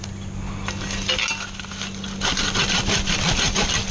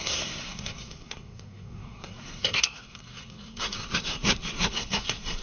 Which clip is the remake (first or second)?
second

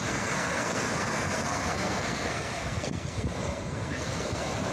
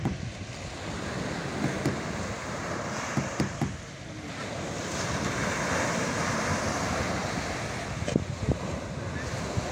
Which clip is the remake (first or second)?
first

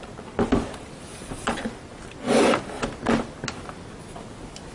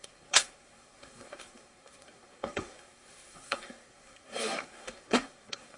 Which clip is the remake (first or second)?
second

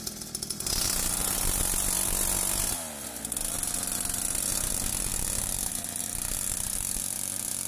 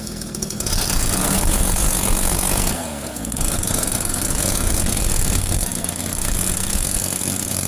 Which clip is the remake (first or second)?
second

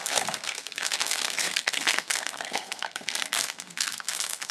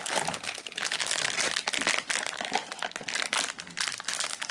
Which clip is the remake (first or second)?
first